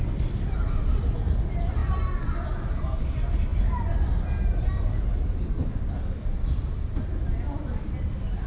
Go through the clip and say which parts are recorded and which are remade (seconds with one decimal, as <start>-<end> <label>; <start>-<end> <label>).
0.0-1.8 remade; 1.8-2.8 recorded; 2.8-3.5 remade; 3.5-5.3 recorded; 5.3-8.5 remade